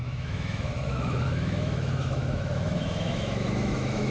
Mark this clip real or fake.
fake